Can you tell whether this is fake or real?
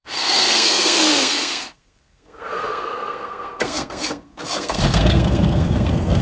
fake